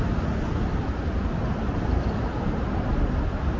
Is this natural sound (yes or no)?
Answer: yes